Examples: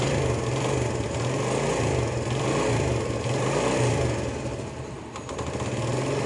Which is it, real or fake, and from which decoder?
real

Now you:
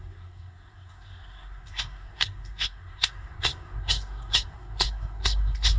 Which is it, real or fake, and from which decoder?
fake, codec, SNAC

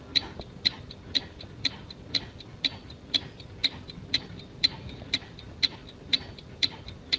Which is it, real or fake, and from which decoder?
real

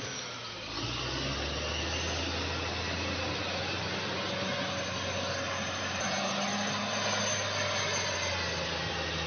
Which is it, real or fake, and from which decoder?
real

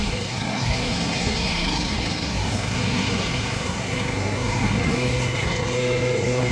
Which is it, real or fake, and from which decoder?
fake, codec, SNAC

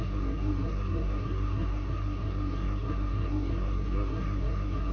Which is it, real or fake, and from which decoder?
fake, codec, SNAC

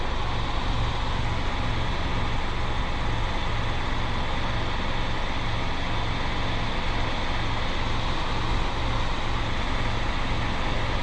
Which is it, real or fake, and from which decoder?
real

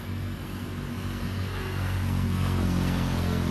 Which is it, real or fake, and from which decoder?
fake, codec, SNAC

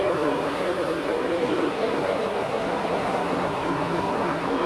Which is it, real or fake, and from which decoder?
fake, codec, SNAC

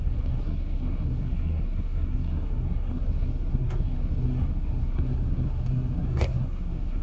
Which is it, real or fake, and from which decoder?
fake, codec, SNAC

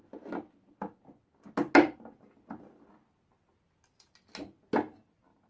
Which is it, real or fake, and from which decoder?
real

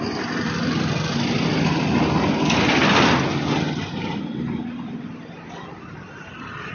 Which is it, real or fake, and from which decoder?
real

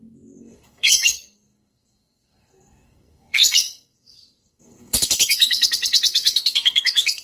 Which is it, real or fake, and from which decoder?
fake, codec, SNAC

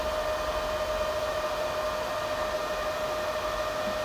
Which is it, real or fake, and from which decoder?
real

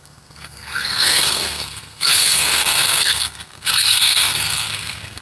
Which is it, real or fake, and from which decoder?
fake, codec, SNAC